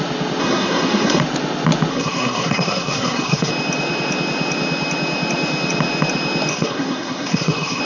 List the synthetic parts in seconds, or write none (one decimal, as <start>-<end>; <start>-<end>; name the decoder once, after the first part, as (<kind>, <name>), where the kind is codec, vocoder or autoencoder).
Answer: 0.4-1.2 (codec, SNAC); 1.9-3.5; 6.5-7.8